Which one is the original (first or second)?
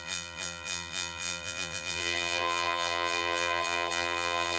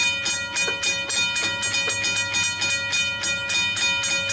second